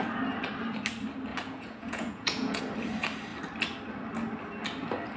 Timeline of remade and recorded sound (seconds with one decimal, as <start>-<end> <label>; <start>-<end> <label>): 0.0-1.3 recorded; 1.3-2.6 remade; 2.6-5.2 recorded

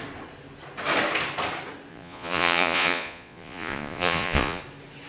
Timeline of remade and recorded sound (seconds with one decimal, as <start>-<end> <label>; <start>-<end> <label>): 0.0-1.9 recorded; 1.9-4.6 remade; 4.6-5.1 recorded

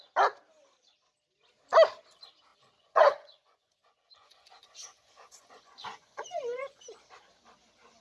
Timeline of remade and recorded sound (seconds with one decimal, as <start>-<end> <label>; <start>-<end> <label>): 0.0-2.5 recorded; 2.5-6.8 remade; 6.8-8.0 recorded

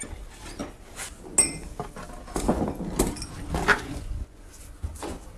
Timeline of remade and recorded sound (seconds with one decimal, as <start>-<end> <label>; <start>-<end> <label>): 0.0-3.7 recorded; 3.7-5.4 remade

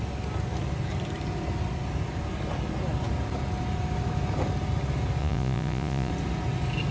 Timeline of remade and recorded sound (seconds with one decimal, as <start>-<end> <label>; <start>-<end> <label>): 0.0-5.2 recorded; 5.2-6.1 remade; 6.1-6.9 recorded

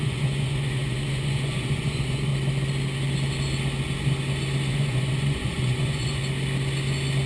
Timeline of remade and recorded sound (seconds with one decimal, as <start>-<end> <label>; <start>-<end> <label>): 0.0-2.3 remade; 2.3-4.7 recorded; 4.7-6.2 remade; 6.2-7.3 recorded

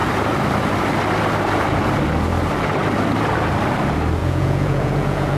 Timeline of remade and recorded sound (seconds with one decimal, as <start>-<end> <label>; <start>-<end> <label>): 0.0-4.2 recorded; 4.2-5.4 remade

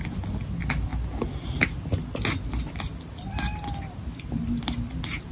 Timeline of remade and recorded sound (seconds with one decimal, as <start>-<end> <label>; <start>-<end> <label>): 0.0-5.3 recorded